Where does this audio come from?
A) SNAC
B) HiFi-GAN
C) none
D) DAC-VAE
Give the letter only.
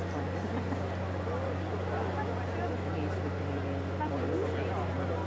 C